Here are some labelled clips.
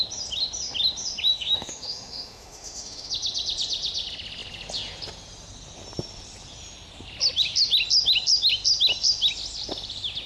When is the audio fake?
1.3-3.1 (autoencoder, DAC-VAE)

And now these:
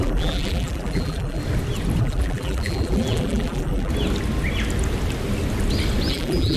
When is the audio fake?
0.0-1.4 (vocoder, BigVGAN v2); 2.0-3.9; 6.1-6.6

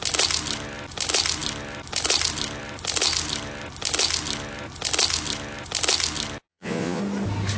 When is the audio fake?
6.5-7.0 (vocoder, Vocos)